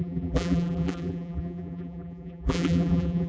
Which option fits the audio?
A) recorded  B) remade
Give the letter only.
B